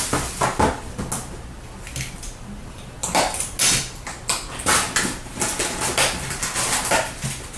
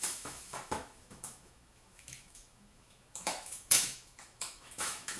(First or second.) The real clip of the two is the first